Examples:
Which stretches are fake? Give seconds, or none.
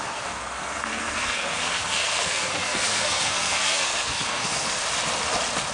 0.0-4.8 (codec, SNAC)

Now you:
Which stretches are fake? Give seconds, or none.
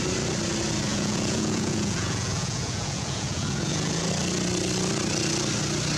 0.9-4.1 (vocoder, Vocos)